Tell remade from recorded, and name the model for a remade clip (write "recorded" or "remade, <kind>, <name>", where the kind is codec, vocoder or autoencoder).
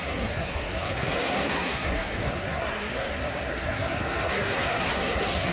remade, codec, SNAC